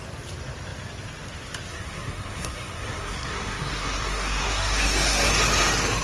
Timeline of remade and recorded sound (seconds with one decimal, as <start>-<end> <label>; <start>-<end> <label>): 0.0-1.7 recorded; 1.7-5.3 remade; 5.3-6.0 recorded